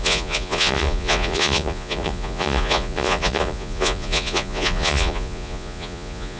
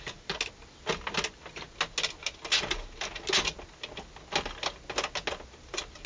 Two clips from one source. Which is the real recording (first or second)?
second